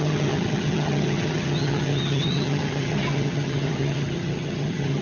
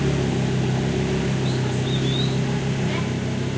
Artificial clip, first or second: first